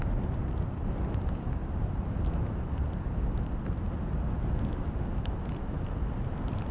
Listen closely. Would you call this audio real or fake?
real